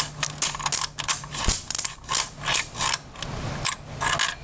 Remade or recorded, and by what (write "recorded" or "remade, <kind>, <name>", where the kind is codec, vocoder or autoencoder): recorded